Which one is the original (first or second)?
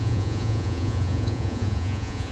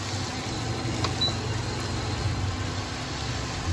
second